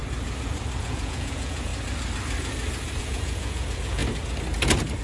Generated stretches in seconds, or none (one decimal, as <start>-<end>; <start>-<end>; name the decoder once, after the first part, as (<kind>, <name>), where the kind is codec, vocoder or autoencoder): 0.8-1.7 (vocoder, Vocos); 3.0-4.0